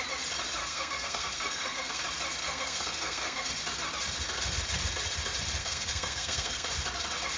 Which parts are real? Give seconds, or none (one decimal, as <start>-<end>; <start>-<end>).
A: 0.0-0.6; 2.0-2.4; 3.5-5.6; 6.7-7.4